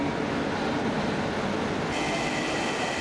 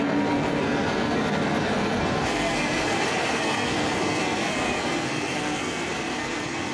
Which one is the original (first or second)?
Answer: first